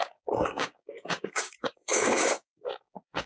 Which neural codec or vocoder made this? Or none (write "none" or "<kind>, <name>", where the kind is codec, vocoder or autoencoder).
codec, DAC